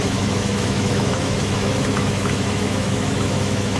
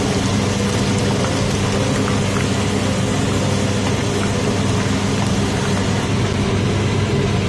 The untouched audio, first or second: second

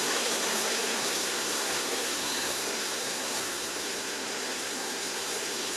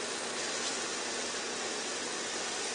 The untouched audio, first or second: second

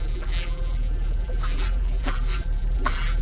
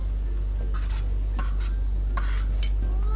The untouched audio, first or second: second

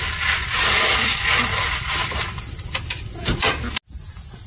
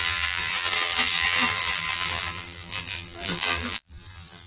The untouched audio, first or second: first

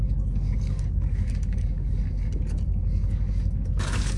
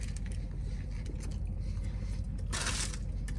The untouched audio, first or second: second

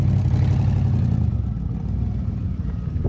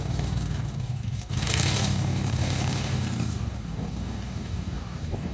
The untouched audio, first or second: first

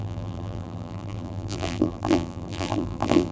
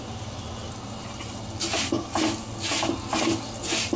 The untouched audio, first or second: second